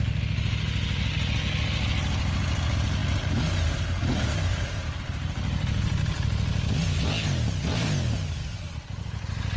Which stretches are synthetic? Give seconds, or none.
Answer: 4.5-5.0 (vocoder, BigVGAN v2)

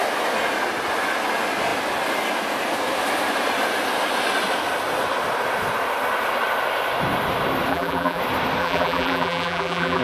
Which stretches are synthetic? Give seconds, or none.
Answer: 7.7-8.2 (vocoder, BigVGAN v2); 8.6-10.0

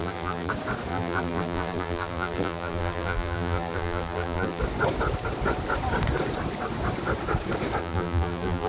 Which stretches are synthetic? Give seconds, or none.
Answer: 0.0-0.5 (vocoder, BigVGAN v2); 0.9-4.6; 7.8-8.7